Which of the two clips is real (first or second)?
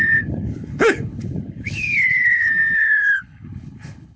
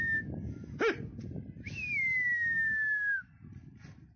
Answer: second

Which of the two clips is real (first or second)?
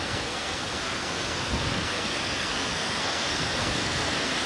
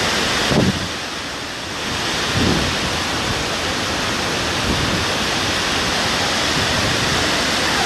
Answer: second